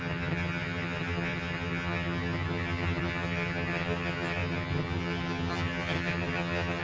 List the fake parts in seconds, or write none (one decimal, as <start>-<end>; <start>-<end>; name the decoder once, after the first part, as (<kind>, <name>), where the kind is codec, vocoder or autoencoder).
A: 0.0-6.8 (vocoder, HiFi-GAN)